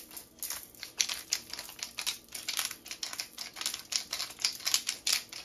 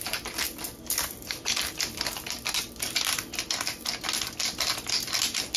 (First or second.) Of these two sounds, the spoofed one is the second